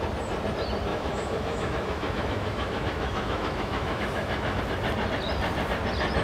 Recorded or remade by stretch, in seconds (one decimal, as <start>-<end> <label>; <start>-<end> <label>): 0.0-0.9 recorded; 0.9-4.6 remade; 4.6-6.2 recorded